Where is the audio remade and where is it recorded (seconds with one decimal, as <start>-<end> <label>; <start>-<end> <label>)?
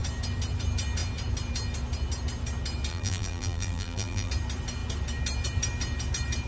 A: 0.0-2.9 recorded; 2.9-4.3 remade; 4.3-6.5 recorded